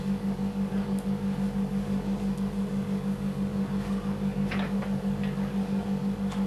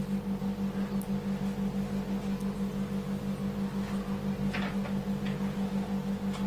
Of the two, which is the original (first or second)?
second